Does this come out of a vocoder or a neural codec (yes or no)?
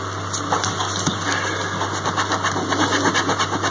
no